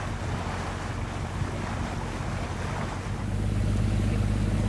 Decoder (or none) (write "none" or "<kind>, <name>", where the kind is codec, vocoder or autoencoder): none